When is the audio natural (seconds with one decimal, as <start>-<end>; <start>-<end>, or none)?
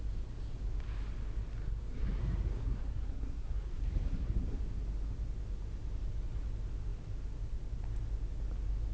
0.0-1.6; 4.6-8.9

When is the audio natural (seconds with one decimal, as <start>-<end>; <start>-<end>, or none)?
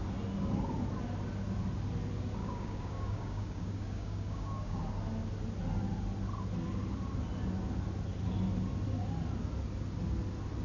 0.0-2.4; 4.8-10.6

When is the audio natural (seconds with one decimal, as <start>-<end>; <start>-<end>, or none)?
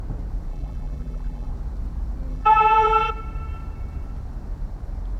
0.0-0.5; 1.5-2.3; 3.1-5.2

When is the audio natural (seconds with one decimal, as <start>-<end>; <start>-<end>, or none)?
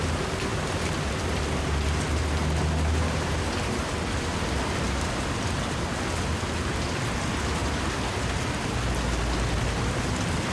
0.0-10.5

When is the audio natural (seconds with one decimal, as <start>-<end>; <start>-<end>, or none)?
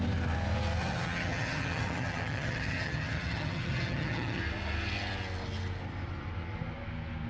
0.0-0.8; 4.4-7.3